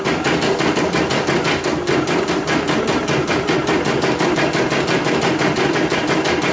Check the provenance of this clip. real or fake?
real